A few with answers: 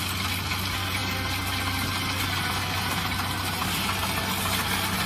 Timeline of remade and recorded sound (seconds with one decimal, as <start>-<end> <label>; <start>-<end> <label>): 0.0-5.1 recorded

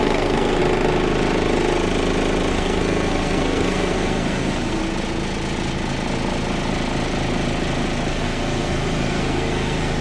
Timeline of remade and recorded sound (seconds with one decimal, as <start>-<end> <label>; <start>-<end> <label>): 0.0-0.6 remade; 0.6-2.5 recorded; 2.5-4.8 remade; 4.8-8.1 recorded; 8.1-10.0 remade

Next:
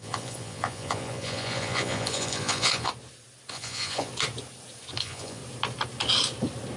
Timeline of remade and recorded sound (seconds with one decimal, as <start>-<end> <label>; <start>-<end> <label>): 0.0-2.9 remade; 2.9-3.5 recorded; 3.5-4.1 remade; 4.1-5.0 recorded; 5.0-5.4 remade; 5.4-6.8 recorded